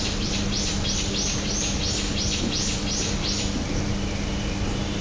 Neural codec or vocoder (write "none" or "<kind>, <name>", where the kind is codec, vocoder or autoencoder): none